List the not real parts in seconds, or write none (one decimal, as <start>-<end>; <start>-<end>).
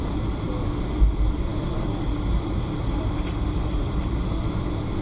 none